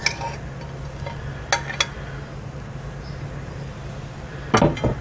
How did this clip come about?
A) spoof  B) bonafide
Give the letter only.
B